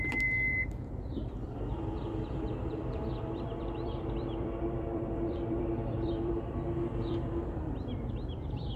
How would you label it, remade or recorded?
remade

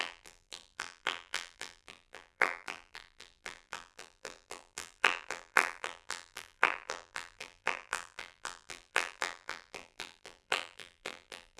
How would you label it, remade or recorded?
remade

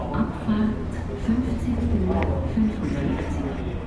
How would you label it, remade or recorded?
recorded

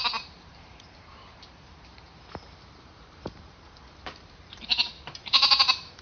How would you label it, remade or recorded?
remade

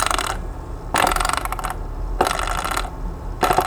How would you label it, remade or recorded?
recorded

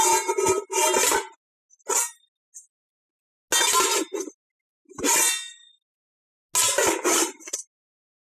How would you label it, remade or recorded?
recorded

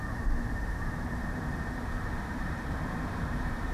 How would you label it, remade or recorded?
remade